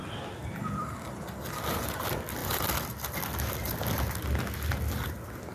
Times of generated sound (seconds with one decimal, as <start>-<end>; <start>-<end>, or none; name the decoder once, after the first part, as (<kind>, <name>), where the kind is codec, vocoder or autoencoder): 0.8-1.6 (vocoder, BigVGAN v2); 2.4-3.2